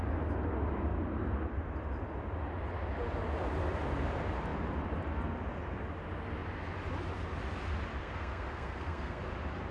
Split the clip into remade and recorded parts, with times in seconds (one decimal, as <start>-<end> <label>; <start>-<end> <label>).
0.0-8.0 recorded; 8.0-9.2 remade; 9.2-9.7 recorded